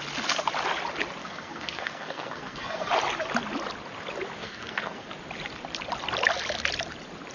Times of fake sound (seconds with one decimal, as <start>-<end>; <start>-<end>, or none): 1.2-2.9; 4.4-5.1